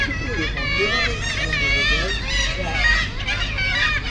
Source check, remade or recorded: recorded